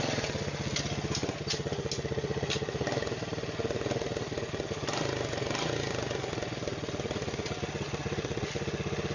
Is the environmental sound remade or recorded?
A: recorded